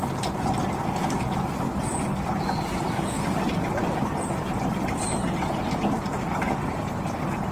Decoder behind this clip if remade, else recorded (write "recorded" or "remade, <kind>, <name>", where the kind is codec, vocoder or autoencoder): recorded